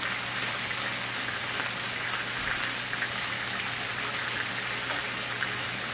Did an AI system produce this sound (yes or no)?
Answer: no